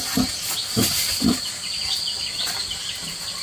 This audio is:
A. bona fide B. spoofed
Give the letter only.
A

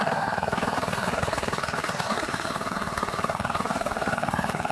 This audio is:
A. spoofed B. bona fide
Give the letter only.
A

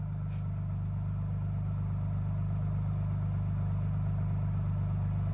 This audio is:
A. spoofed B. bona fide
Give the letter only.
B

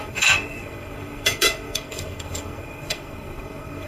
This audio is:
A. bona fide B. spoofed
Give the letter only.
B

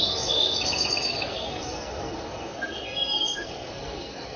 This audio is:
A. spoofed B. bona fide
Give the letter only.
A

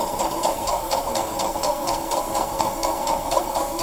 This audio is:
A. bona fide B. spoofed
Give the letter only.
B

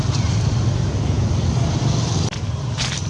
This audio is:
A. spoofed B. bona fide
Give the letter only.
B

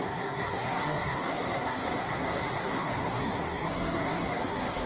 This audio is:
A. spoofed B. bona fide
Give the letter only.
A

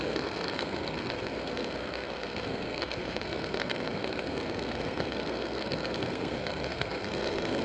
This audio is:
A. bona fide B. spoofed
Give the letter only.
B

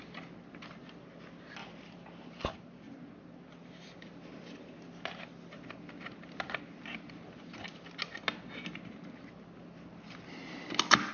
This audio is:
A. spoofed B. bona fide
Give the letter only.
B